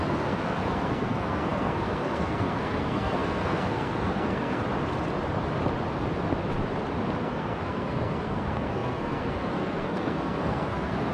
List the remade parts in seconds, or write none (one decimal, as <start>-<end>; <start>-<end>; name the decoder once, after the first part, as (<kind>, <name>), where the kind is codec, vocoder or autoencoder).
0.0-4.6 (codec, SNAC); 7.2-11.1